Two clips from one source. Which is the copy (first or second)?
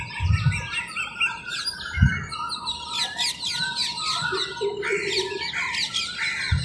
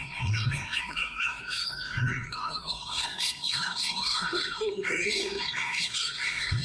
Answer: second